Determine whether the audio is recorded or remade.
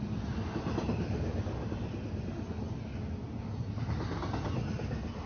recorded